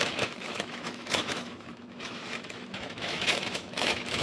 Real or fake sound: fake